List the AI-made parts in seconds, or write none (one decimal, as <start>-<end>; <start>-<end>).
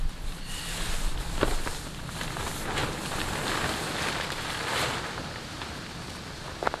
none